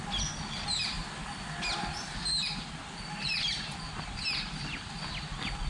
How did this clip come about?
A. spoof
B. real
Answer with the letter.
B